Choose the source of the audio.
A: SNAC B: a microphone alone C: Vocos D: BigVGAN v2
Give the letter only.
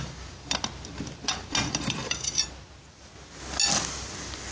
B